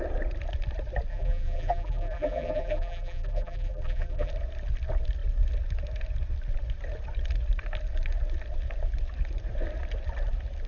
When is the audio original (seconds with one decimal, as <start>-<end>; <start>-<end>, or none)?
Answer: 0.0-1.1; 4.3-10.7